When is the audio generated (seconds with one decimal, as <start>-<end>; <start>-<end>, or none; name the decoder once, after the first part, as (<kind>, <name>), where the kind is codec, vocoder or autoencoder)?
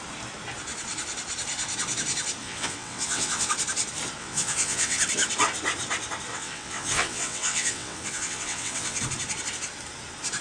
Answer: 2.4-3.5 (vocoder, WaveNeXt); 4.2-5.0; 6.3-9.0